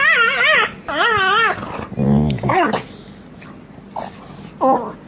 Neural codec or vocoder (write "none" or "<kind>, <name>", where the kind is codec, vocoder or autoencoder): none